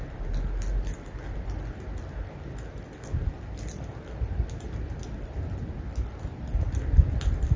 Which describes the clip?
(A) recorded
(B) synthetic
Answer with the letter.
A